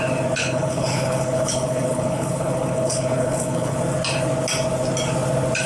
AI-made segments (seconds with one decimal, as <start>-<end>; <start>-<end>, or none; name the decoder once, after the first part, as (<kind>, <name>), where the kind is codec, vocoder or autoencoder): 0.4-3.8 (codec, HILCodec)